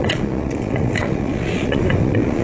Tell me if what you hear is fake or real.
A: fake